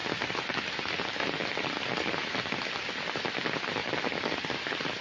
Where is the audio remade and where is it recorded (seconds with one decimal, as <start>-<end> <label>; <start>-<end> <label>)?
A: 0.0-2.9 remade; 2.9-3.8 recorded; 3.8-5.0 remade